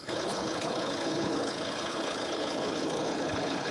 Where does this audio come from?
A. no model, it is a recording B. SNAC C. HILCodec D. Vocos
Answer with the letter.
C